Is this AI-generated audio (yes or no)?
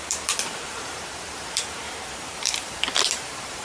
yes